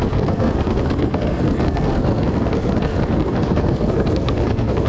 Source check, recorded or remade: remade